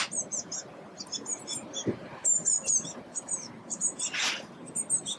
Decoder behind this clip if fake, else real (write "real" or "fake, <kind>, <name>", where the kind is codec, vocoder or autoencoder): real